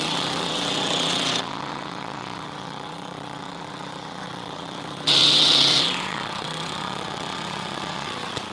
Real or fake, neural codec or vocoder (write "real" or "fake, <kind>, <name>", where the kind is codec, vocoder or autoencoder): fake, vocoder, WaveNeXt